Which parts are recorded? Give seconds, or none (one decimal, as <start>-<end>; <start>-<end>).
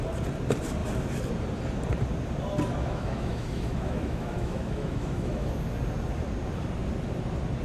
0.0-2.8; 5.5-7.6